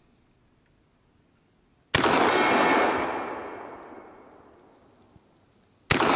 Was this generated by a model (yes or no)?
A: no